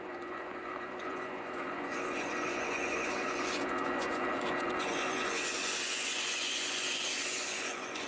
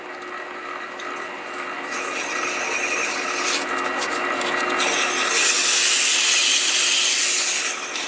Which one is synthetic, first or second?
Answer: first